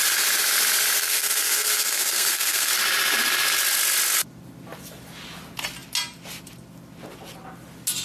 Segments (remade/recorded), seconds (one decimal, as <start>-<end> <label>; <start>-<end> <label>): 0.0-1.0 recorded; 1.0-2.7 remade; 2.7-8.0 recorded